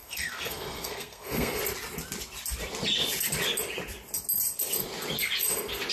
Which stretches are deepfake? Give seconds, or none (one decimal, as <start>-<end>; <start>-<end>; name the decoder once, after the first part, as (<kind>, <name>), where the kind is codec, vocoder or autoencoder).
0.0-1.6 (codec, SNAC)